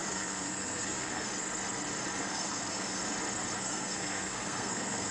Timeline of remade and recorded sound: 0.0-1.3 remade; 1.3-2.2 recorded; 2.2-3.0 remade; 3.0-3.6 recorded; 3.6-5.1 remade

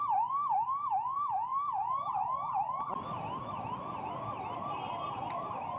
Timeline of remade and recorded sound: 0.0-5.8 recorded

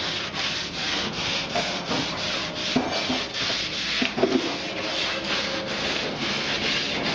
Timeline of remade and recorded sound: 0.0-0.9 recorded; 0.9-1.9 remade; 1.9-3.3 recorded; 3.3-4.6 remade; 4.6-5.0 recorded; 5.0-6.5 remade; 6.5-7.1 recorded

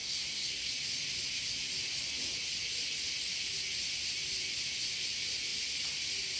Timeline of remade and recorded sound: 0.0-0.7 remade; 0.7-6.4 recorded

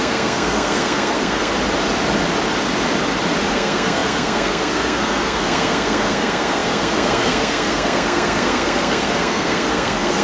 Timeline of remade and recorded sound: 0.0-1.5 remade; 1.5-3.5 recorded; 3.5-10.2 remade

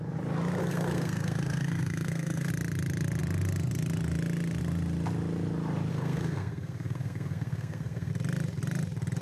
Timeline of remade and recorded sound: 0.0-0.6 recorded; 0.6-2.5 remade; 2.5-5.9 recorded; 5.9-8.1 remade; 8.1-9.2 recorded

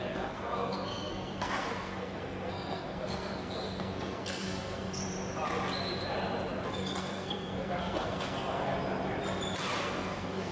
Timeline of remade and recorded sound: 0.0-5.0 remade; 5.0-6.7 recorded; 6.7-8.7 remade; 8.7-9.8 recorded; 9.8-10.5 remade